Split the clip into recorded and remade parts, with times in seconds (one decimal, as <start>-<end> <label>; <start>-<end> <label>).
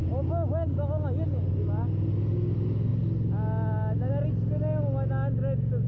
0.0-5.9 recorded